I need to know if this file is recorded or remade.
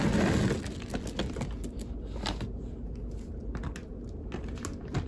recorded